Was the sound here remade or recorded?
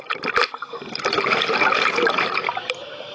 recorded